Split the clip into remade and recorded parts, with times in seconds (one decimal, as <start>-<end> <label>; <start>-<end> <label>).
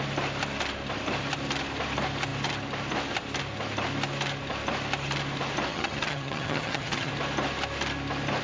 0.0-5.7 recorded; 5.7-7.1 remade; 7.1-8.4 recorded